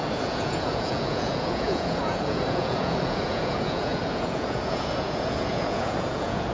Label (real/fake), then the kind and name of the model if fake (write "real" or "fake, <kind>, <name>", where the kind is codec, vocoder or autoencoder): fake, vocoder, Vocos